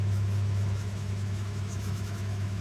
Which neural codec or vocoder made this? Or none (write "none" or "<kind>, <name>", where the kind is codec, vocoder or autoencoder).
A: autoencoder, DAC-VAE